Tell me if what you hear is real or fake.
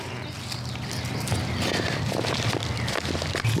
real